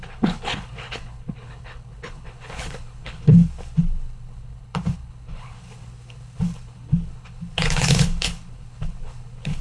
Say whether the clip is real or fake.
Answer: fake